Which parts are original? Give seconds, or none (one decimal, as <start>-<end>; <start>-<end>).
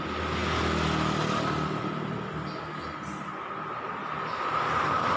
0.0-5.2